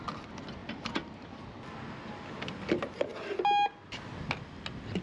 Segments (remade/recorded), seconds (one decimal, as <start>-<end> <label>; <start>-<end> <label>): 0.0-5.0 recorded